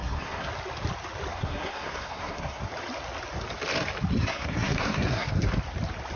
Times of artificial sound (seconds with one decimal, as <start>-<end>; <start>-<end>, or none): 0.0-0.5; 1.3-2.7; 4.1-5.5